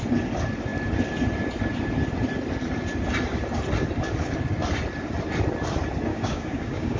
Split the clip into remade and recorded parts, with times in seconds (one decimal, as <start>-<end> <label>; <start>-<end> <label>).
0.0-6.1 recorded; 6.1-7.0 remade